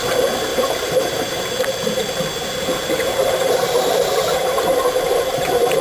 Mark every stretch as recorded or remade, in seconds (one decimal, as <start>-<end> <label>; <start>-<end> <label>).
0.0-0.5 recorded; 0.5-1.4 remade; 1.4-3.2 recorded; 3.2-5.8 remade